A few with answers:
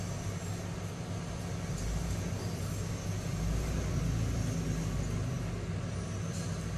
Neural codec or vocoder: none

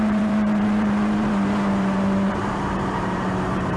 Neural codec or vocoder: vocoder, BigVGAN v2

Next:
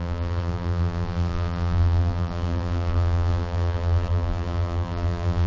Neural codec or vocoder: vocoder, BigVGAN v2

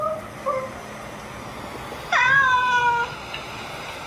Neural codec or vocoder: none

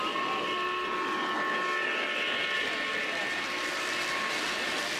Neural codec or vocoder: none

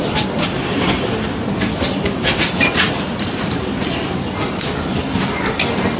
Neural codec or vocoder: vocoder, BigVGAN v2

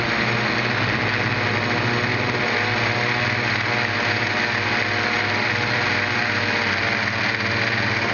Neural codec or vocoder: none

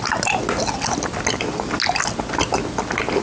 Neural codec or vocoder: none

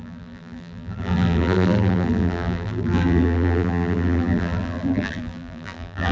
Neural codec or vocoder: vocoder, BigVGAN v2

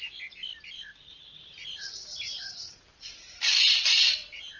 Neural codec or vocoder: vocoder, BigVGAN v2